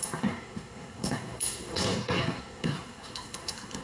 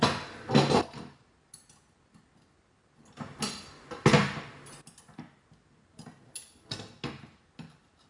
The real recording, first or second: second